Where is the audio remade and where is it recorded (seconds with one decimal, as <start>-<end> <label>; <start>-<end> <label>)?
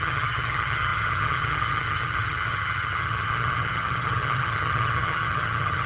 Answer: 0.0-5.9 remade